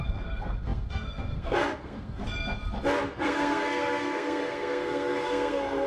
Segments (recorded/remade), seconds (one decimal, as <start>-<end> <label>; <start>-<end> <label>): 0.0-2.2 remade; 2.2-3.1 recorded; 3.1-5.9 remade

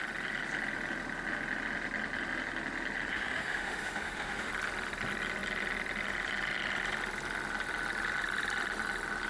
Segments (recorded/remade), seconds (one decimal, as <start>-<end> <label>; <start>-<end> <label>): 0.0-3.1 recorded; 3.1-4.5 remade; 4.5-9.3 recorded

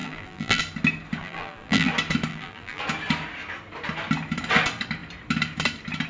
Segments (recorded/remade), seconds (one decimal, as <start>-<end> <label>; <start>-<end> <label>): 0.0-0.6 remade; 0.6-1.2 recorded; 1.2-1.9 remade; 1.9-2.3 recorded; 2.3-2.8 remade; 2.8-6.1 recorded

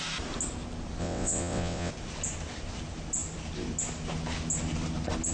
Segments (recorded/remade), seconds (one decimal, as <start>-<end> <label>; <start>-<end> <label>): 0.0-1.0 recorded; 1.0-1.9 remade; 1.9-5.3 recorded